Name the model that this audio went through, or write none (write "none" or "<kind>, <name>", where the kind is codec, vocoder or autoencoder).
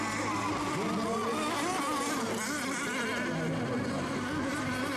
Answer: none